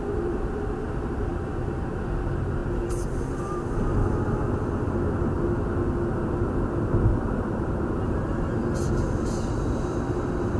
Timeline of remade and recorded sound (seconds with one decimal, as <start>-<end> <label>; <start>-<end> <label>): 0.0-2.6 remade; 2.6-3.3 recorded; 3.3-3.9 remade; 3.9-7.2 recorded; 7.2-8.6 remade; 8.6-9.5 recorded; 9.5-10.6 remade